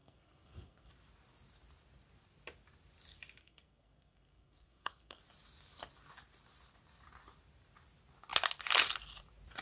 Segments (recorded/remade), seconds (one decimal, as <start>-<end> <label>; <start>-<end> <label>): 0.0-0.9 remade; 0.9-3.4 recorded; 3.4-5.2 remade; 5.2-9.6 recorded